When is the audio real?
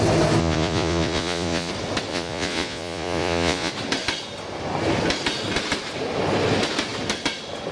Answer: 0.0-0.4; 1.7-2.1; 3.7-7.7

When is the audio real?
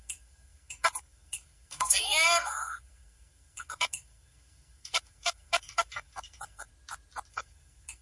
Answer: 6.7-7.3